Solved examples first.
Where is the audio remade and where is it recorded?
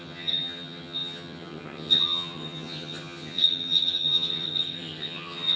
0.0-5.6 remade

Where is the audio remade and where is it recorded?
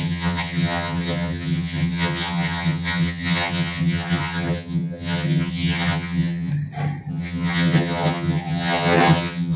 0.0-6.5 remade; 6.5-7.1 recorded; 7.1-9.6 remade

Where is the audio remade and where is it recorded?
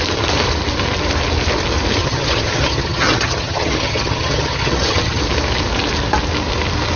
0.0-2.0 recorded; 2.0-5.2 remade; 5.2-7.0 recorded